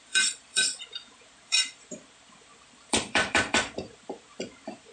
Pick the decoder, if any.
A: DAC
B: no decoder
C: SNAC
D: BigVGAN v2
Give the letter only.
D